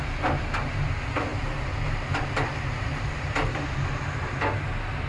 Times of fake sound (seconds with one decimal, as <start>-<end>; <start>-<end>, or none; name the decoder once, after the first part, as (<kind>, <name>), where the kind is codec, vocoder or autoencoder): 1.3-4.4 (vocoder, BigVGAN v2)

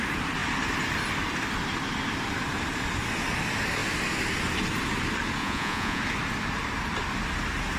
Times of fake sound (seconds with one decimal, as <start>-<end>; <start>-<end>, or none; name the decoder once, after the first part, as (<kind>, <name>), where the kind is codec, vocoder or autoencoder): 5.4-6.0 (vocoder, Vocos)

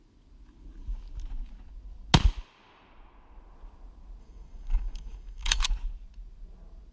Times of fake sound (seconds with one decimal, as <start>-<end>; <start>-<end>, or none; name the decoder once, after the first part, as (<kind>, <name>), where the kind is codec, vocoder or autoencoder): 4.2-5.6 (codec, DAC)

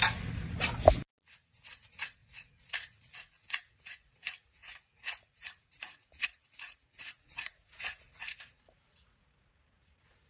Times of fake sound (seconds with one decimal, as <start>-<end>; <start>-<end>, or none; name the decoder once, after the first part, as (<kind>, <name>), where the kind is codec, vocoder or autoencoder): 1.7-10.3 (vocoder, Vocos)

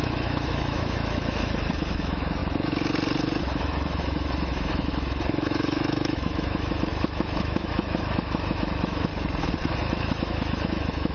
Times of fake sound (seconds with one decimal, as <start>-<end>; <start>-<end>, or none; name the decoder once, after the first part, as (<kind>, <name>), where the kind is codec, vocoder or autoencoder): 0.0-2.4 (autoencoder, DAC-VAE); 3.4-9.1; 9.7-11.1

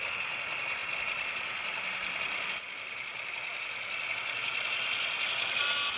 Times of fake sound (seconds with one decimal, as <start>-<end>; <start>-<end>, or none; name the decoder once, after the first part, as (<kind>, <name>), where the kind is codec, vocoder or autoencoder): none

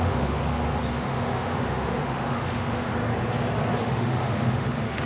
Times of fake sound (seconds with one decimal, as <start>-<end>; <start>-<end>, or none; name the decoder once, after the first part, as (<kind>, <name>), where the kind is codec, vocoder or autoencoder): 0.0-0.4 (autoencoder, DAC-VAE); 0.9-2.9; 3.8-5.1